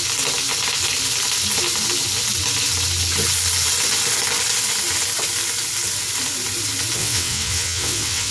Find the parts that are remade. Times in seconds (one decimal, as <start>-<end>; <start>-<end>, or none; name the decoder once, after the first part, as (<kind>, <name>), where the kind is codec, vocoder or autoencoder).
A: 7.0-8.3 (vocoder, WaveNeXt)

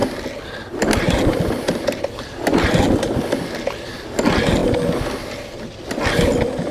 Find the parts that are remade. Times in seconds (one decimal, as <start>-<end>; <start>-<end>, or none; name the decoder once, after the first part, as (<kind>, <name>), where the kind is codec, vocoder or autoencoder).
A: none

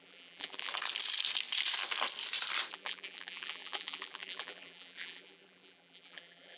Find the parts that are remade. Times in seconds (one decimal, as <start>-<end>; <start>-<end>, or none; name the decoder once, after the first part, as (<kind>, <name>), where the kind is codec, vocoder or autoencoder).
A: 0.0-0.7 (vocoder, BigVGAN v2); 2.7-6.6

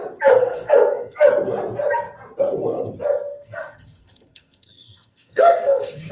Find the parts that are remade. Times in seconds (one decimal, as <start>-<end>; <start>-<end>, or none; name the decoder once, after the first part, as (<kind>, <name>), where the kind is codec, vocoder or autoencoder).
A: 0.4-1.3 (codec, SNAC); 3.3-6.1

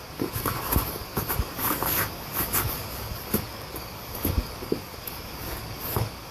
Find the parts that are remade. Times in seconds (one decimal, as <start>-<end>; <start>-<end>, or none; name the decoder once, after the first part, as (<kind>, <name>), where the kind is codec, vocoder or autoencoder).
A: 0.0-6.3 (codec, DAC)

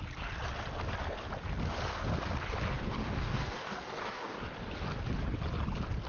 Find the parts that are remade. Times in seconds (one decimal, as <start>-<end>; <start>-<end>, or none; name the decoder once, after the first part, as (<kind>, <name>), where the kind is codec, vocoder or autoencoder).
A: 3.0-4.4 (codec, DAC)